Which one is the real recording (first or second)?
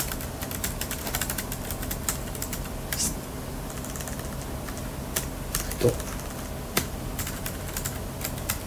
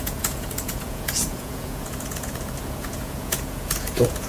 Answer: first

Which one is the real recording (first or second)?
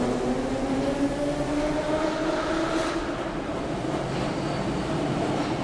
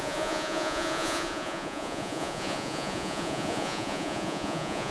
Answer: first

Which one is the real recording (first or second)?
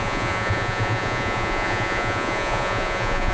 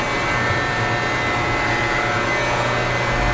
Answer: second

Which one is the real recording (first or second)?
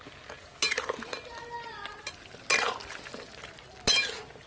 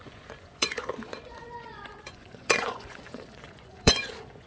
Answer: first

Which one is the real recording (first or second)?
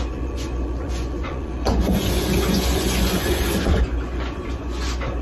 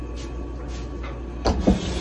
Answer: second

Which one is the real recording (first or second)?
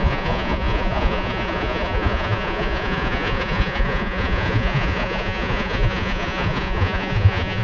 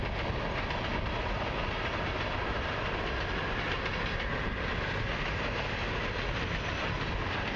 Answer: second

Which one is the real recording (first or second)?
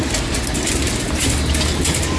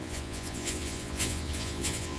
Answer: first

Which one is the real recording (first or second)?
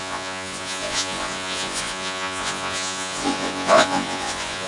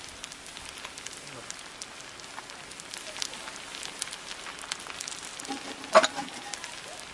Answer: second